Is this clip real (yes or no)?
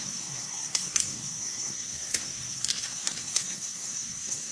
no